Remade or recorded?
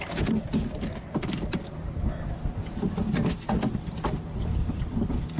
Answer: recorded